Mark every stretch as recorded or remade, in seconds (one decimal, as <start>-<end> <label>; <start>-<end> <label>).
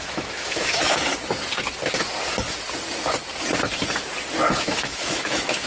0.0-1.1 remade; 1.1-4.5 recorded; 4.5-5.7 remade